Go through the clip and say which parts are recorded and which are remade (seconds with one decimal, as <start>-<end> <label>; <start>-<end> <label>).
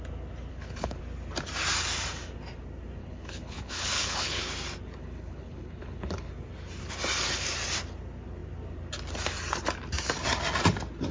0.0-0.5 recorded; 0.5-1.0 remade; 1.0-3.0 recorded; 3.0-4.4 remade; 4.4-5.0 recorded; 5.0-6.3 remade; 6.3-11.1 recorded